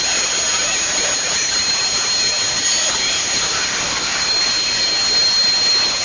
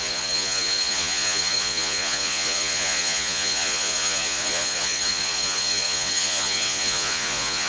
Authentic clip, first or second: first